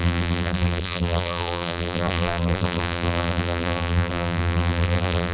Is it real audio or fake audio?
fake